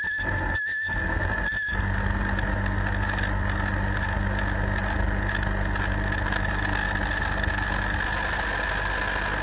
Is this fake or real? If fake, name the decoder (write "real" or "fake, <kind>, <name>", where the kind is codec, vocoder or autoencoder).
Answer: real